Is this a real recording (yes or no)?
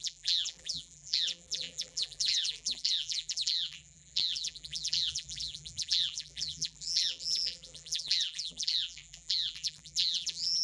no